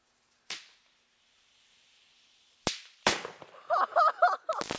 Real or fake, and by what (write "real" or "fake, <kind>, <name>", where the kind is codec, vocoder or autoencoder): real